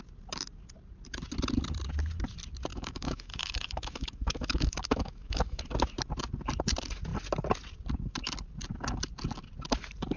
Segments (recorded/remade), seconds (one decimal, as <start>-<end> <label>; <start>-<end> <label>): 0.0-2.7 recorded; 2.7-5.6 remade; 5.6-10.2 recorded